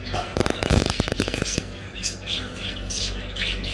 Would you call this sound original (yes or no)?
no